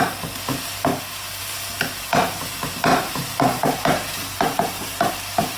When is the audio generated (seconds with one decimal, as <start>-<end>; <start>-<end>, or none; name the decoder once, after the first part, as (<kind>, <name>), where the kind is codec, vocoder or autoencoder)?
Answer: 2.9-5.1 (vocoder, BigVGAN v2)